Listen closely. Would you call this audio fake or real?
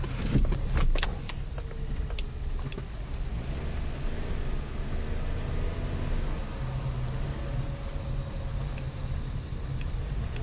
real